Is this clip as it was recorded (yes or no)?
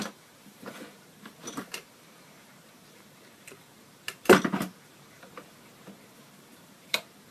no